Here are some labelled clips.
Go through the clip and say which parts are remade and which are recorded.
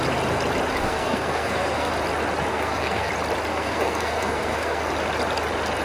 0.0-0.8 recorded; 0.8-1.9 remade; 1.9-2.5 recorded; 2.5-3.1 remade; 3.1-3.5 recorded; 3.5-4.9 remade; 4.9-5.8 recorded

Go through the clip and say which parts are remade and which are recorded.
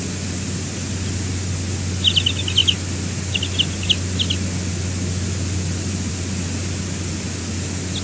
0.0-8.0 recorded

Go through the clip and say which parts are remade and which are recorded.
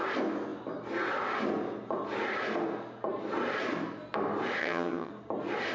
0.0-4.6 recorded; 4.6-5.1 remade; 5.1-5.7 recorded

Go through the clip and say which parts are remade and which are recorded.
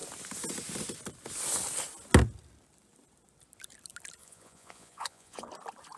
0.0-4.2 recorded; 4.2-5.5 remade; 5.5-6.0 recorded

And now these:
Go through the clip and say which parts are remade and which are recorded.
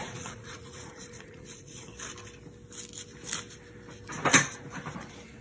0.0-1.9 remade; 1.9-5.4 recorded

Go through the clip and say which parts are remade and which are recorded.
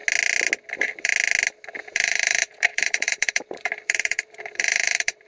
0.0-0.7 recorded; 0.7-1.1 remade; 1.1-1.9 recorded; 1.9-5.3 remade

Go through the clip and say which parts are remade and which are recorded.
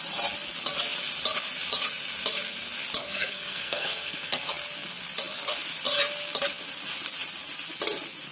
0.0-3.0 recorded; 3.0-4.5 remade; 4.5-8.3 recorded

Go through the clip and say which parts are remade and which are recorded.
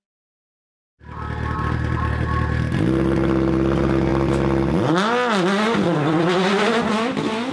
0.0-7.5 recorded